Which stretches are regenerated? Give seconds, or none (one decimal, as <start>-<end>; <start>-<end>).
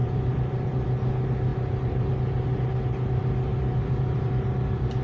0.0-0.7; 1.5-2.1; 3.5-4.3